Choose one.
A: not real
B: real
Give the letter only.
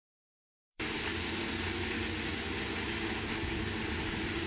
A